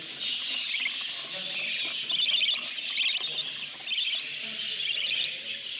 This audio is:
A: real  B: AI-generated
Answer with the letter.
A